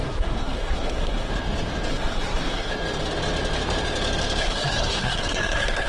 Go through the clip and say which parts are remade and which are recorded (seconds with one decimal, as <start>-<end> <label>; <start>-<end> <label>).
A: 0.0-1.3 remade; 1.3-1.9 recorded; 1.9-2.7 remade; 2.7-4.4 recorded; 4.4-5.9 remade